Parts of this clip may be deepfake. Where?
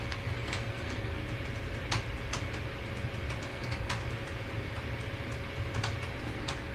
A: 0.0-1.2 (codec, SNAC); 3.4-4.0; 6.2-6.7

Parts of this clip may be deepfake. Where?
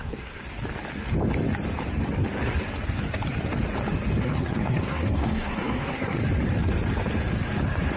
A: 0.0-0.4 (codec, SNAC); 4.2-6.2